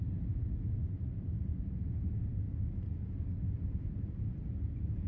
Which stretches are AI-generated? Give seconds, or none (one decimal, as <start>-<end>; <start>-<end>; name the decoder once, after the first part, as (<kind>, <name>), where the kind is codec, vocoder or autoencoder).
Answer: none